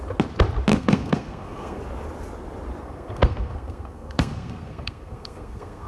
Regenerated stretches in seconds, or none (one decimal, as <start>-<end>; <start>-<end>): 0.7-1.8; 2.8-5.9